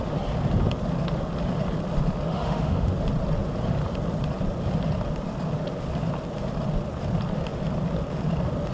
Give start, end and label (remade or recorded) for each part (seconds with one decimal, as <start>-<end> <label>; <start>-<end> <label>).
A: 0.0-2.3 recorded; 2.3-2.9 remade; 2.9-8.7 recorded